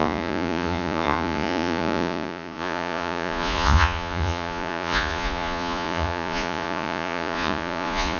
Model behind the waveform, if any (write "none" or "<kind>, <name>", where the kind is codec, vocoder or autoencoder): vocoder, Vocos